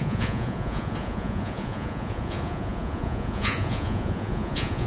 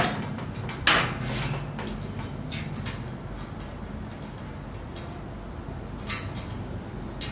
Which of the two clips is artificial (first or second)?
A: first